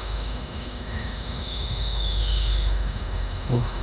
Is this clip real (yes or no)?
no